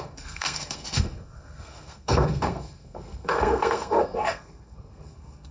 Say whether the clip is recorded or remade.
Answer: remade